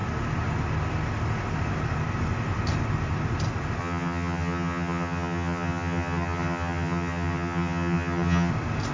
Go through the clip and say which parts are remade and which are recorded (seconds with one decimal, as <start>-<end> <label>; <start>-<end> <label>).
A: 0.0-3.8 recorded; 3.8-8.5 remade; 8.5-8.9 recorded